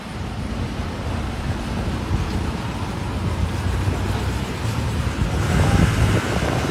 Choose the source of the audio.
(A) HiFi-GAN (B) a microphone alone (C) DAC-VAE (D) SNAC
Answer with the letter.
B